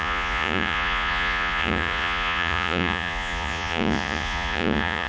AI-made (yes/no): yes